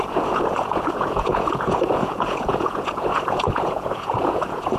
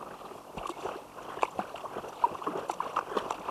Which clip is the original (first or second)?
second